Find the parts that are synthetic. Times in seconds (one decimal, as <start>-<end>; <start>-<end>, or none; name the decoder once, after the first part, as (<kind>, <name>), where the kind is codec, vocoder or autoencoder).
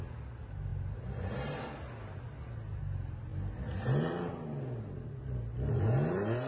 none